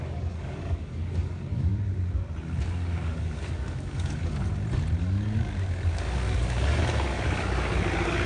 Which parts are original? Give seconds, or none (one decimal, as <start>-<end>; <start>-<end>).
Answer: 1.7-2.6; 4.5-5.0